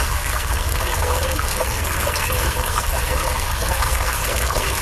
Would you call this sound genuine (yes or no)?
no